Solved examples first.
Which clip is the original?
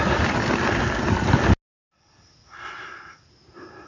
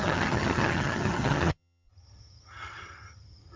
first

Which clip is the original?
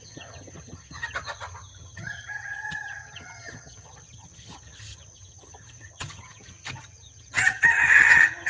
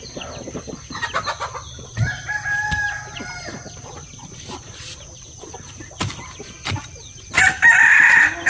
second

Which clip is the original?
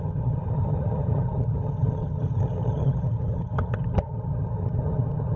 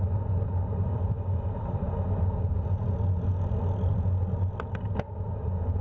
second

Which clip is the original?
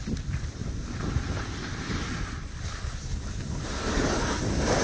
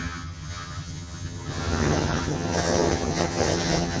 first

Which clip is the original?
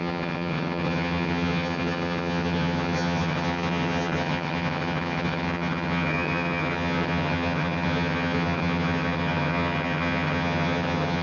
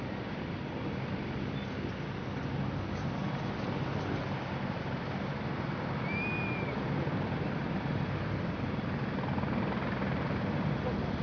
second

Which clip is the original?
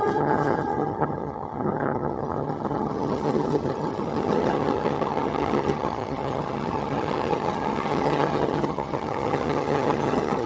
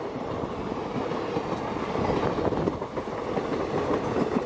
second